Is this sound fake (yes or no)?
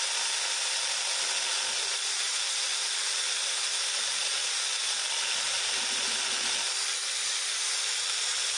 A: no